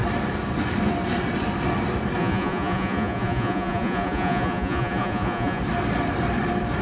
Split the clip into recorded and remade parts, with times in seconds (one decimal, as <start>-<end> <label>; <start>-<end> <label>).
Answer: 0.0-2.2 recorded; 2.2-5.6 remade; 5.6-6.8 recorded